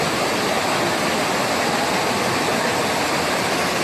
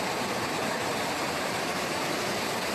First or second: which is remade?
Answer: second